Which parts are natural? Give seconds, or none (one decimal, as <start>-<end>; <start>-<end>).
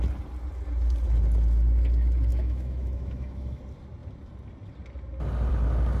0.0-2.3; 3.6-6.0